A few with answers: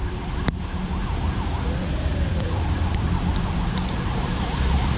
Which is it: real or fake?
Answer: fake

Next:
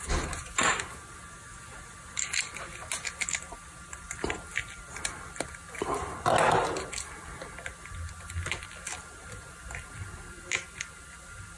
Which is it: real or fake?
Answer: real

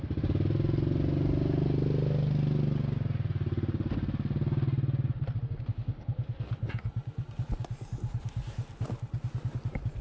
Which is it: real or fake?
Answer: real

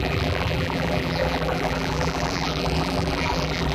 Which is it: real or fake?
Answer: fake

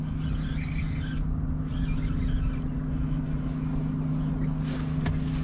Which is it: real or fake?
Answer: real